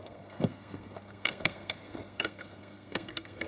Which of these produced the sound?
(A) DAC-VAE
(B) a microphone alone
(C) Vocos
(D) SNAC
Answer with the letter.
D